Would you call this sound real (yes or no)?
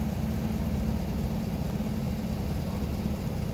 yes